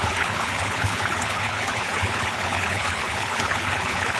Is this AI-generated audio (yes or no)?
yes